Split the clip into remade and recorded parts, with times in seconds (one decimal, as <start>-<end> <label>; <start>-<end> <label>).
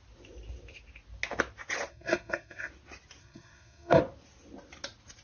0.0-1.9 recorded; 1.9-2.7 remade; 2.7-3.2 recorded; 3.2-4.0 remade; 4.0-5.2 recorded